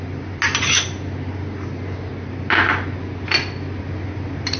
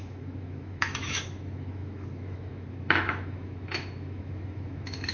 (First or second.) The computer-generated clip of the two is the second